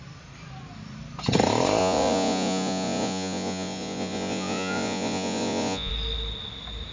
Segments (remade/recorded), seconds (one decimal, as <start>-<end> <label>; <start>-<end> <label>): 0.0-1.8 recorded; 1.8-5.9 remade; 5.9-6.9 recorded

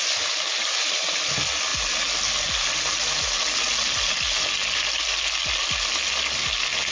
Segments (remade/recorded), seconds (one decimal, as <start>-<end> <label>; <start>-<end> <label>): 0.0-6.9 recorded

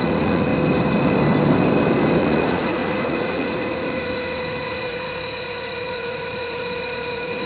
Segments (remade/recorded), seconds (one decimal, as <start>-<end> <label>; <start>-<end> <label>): 0.0-0.5 remade; 0.5-2.2 recorded; 2.2-7.5 remade